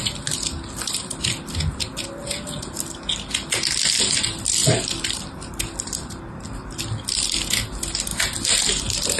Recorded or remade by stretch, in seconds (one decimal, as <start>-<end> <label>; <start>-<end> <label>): 0.0-9.2 recorded